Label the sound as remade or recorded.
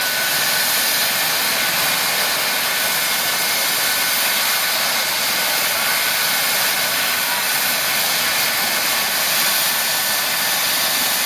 recorded